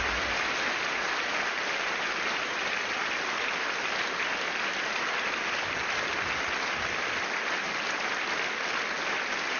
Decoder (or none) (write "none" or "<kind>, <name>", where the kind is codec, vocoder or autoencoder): none